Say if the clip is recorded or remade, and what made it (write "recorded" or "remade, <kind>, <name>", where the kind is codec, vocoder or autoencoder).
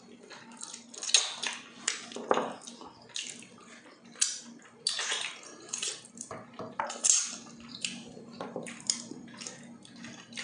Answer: recorded